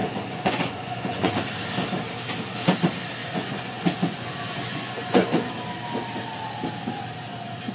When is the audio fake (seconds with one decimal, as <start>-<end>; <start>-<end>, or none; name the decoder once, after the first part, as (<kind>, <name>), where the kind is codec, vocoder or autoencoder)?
0.0-1.3 (vocoder, Vocos); 3.2-5.5